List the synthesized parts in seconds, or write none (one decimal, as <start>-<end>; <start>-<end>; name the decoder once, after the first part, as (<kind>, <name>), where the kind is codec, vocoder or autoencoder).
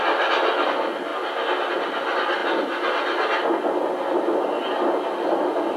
none